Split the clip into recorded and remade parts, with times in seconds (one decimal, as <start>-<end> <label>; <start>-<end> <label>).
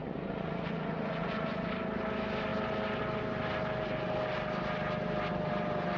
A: 0.0-1.7 remade; 1.7-6.0 recorded